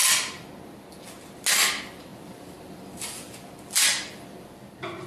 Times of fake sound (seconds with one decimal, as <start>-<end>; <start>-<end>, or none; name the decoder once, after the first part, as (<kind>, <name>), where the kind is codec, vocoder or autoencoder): 1.5-5.1 (vocoder, BigVGAN v2)